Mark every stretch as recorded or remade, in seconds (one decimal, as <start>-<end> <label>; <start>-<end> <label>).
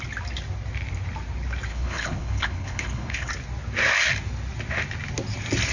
0.0-1.7 recorded; 1.7-3.3 remade; 3.3-5.7 recorded